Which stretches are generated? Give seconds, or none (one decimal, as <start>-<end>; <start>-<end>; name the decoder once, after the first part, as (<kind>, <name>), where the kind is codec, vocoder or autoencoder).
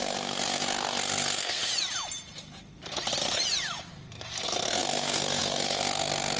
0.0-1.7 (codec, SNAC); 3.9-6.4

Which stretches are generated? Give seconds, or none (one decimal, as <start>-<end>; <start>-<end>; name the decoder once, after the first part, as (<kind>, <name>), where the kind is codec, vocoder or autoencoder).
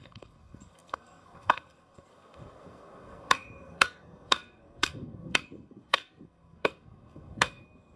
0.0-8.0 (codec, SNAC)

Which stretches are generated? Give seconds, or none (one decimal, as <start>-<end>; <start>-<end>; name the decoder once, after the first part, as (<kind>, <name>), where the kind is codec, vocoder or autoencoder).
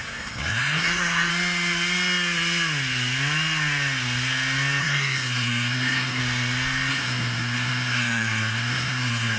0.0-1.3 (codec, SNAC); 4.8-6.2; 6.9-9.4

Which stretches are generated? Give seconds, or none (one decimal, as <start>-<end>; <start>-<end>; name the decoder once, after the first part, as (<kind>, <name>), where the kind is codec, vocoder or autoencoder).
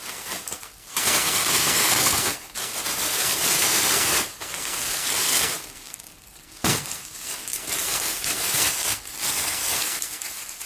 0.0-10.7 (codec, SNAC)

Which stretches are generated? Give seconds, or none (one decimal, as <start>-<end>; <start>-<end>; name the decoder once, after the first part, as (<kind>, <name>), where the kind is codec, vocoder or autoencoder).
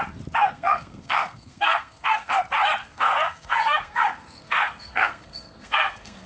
0.4-2.4 (codec, SNAC); 2.8-6.3